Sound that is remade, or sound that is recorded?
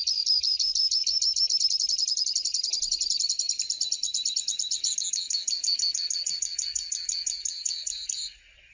recorded